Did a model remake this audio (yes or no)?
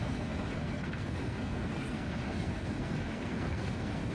yes